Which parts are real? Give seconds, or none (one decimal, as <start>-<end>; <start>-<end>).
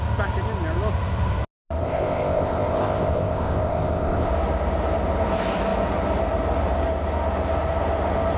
0.0-1.8; 4.3-8.4